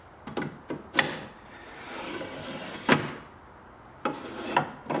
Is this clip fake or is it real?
real